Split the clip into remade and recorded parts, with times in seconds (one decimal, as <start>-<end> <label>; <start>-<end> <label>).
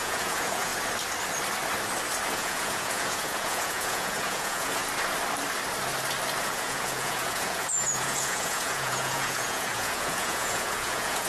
0.0-0.7 remade; 0.7-2.3 recorded; 2.3-4.8 remade; 4.8-6.4 recorded; 6.4-11.3 remade